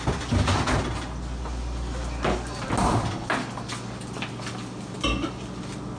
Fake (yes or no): no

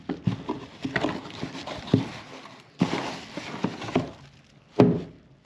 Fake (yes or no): no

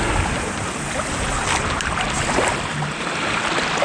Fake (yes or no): no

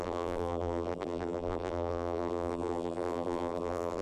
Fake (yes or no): yes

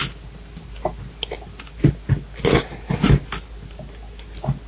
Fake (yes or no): no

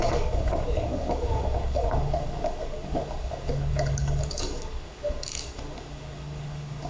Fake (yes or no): yes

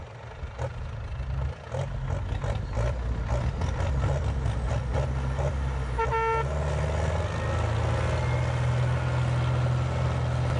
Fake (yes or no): no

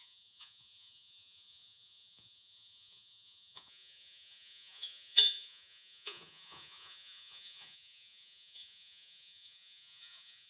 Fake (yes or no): yes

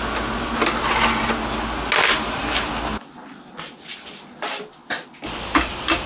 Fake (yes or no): no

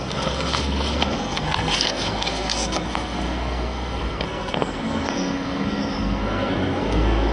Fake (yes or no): yes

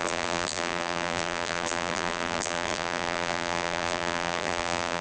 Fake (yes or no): yes